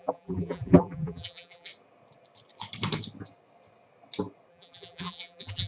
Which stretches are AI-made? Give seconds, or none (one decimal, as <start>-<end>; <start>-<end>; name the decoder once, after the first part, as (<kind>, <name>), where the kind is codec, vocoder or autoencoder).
0.0-1.7 (vocoder, BigVGAN v2); 4.5-5.7